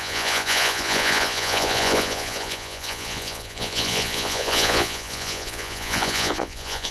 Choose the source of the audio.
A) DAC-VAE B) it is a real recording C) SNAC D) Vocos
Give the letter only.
D